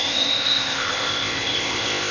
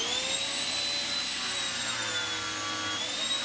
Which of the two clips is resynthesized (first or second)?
first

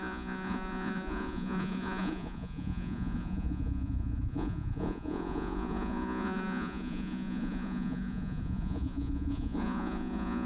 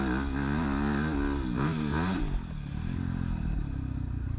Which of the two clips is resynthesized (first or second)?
first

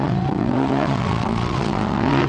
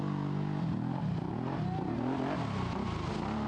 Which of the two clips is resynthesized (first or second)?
first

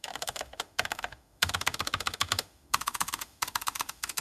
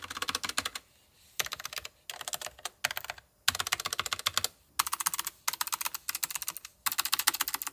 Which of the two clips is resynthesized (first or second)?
first